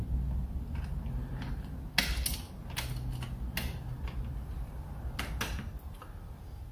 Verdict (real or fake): real